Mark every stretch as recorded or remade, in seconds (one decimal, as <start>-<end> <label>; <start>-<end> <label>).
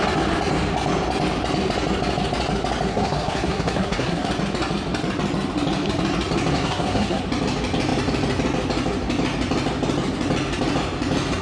0.0-2.9 recorded; 2.9-4.3 remade; 4.3-6.5 recorded; 6.5-7.2 remade; 7.2-11.4 recorded